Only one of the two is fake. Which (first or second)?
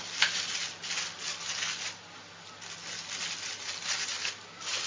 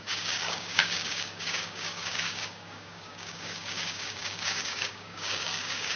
second